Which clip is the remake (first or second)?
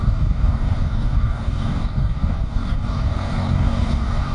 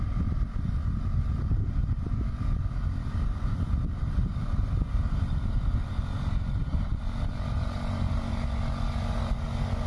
first